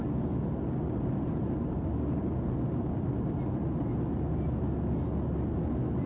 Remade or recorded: recorded